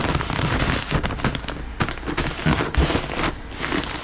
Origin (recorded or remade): recorded